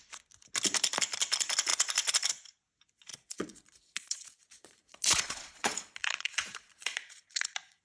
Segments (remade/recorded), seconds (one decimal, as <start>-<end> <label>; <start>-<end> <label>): 0.0-3.1 recorded; 3.1-7.8 remade